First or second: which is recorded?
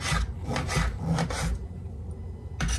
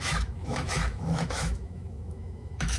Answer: first